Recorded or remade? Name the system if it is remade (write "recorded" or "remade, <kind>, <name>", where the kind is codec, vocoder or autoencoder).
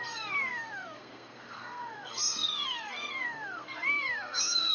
remade, codec, SNAC